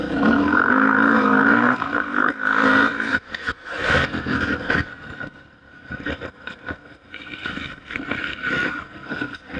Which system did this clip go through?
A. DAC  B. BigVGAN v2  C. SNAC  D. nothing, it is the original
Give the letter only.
C